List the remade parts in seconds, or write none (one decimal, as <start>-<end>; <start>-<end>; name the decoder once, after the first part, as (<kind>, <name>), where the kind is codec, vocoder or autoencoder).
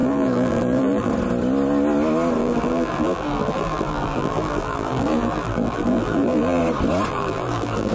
0.0-1.1 (vocoder, BigVGAN v2); 2.4-6.6; 7.1-7.9